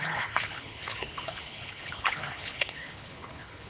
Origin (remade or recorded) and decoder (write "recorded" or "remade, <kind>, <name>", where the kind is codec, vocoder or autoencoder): remade, codec, HILCodec